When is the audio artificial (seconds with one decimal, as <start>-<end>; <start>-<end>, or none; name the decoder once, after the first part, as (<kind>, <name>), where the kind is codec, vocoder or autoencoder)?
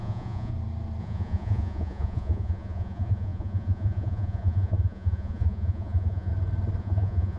0.0-0.5 (vocoder, Vocos); 1.0-6.3; 6.8-7.4